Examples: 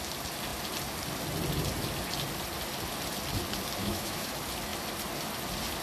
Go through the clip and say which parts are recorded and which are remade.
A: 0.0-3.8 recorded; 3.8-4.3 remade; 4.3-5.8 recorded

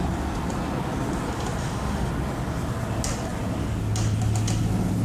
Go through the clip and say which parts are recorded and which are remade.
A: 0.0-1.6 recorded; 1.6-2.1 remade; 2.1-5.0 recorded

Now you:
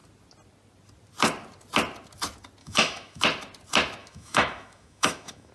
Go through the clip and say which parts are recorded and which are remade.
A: 0.0-2.6 recorded; 2.6-3.2 remade; 3.2-4.0 recorded; 4.0-5.5 remade

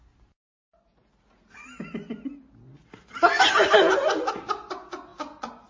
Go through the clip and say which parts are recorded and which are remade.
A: 0.0-5.7 recorded

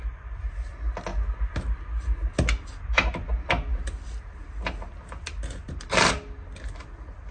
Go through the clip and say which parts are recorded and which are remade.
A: 0.0-7.3 recorded

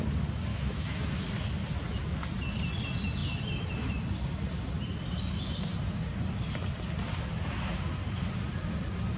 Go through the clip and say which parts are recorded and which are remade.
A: 0.0-0.5 recorded; 0.5-1.1 remade; 1.1-9.2 recorded

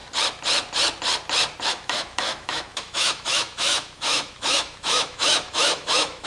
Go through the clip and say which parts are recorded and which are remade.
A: 0.0-1.7 recorded; 1.7-6.3 remade